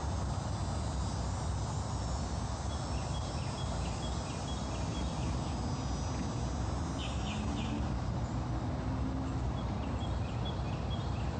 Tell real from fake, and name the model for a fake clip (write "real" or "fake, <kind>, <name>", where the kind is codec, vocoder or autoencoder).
real